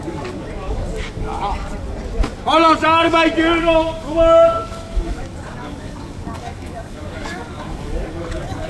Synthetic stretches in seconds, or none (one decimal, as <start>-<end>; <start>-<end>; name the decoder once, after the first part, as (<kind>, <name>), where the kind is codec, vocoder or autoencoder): 0.0-1.7 (codec, DAC); 3.6-8.7